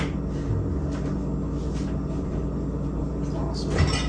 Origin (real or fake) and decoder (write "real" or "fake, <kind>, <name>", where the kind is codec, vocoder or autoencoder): real